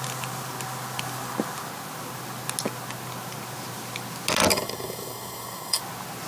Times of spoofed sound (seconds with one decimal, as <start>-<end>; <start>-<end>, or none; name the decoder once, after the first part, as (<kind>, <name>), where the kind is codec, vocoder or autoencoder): 4.5-5.8 (codec, DAC)